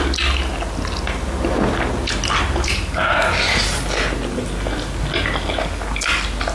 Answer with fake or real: real